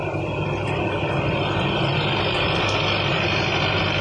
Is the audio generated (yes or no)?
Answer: no